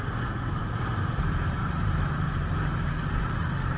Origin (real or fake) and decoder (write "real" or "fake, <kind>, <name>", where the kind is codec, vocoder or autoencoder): fake, vocoder, BigVGAN v2